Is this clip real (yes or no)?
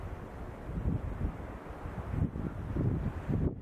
yes